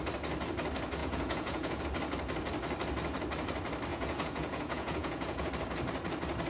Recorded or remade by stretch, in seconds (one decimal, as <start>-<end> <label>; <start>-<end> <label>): 0.0-1.0 recorded; 1.0-1.8 remade; 1.8-3.9 recorded; 3.9-5.5 remade; 5.5-6.5 recorded